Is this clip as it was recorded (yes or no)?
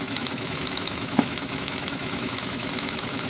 no